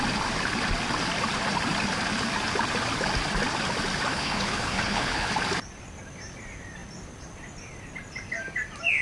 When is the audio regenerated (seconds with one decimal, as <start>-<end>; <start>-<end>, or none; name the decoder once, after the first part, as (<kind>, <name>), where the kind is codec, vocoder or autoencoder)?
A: 4.1-5.3 (codec, HILCodec)